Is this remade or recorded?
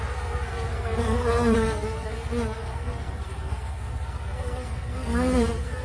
remade